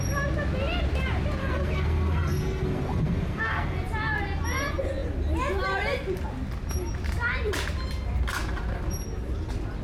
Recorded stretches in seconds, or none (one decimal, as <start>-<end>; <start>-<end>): 0.0-1.4; 3.8-9.8